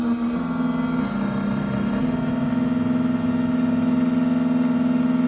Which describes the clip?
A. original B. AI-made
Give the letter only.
A